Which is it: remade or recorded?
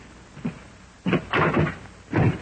recorded